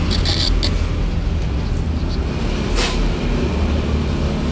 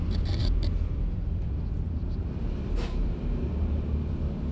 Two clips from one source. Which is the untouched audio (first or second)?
first